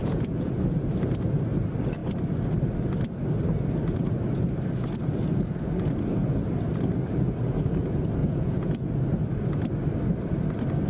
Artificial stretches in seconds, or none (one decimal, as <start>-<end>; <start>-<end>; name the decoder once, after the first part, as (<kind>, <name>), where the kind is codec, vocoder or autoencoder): 0.0-0.5 (vocoder, Vocos); 8.2-8.9